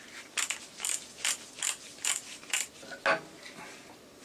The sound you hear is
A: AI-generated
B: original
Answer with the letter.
B